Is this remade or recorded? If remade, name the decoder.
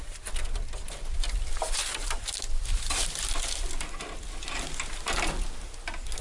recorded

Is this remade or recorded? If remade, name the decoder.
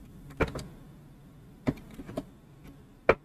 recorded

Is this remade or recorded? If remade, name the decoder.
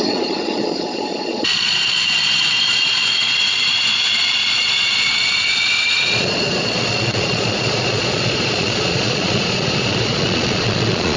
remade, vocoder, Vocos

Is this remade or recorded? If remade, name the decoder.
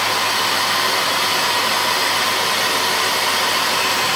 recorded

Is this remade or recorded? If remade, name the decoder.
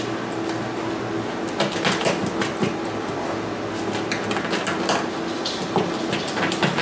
recorded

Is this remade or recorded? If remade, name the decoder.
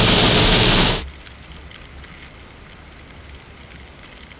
recorded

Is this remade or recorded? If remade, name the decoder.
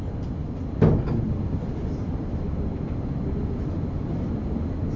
recorded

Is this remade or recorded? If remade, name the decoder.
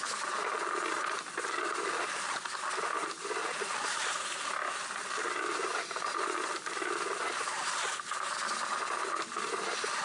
recorded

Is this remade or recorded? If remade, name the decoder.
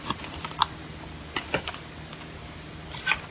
recorded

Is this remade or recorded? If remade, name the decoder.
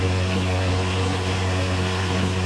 remade, codec, SNAC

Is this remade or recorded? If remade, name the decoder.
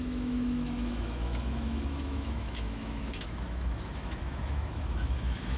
remade, autoencoder, DAC-VAE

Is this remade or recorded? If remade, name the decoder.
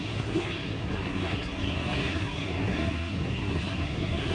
remade, codec, SNAC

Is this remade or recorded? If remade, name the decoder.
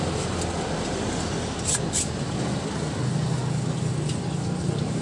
recorded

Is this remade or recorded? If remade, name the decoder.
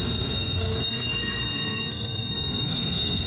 remade, codec, SNAC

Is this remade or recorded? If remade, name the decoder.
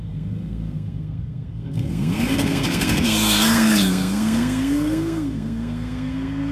remade, codec, SNAC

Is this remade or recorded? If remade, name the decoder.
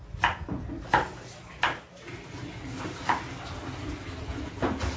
recorded